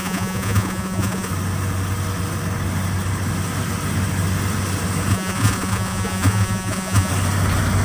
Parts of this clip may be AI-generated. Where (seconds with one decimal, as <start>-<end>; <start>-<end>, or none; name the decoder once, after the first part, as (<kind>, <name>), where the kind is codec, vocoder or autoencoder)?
0.0-1.3 (vocoder, Vocos); 5.1-7.1